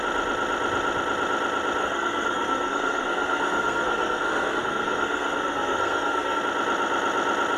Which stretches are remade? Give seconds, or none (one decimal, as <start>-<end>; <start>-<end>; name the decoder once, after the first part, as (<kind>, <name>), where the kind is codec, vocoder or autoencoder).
1.8-6.4 (codec, SNAC)